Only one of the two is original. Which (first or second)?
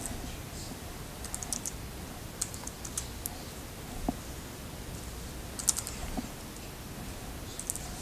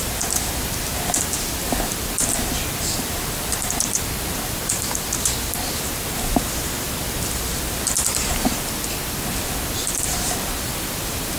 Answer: first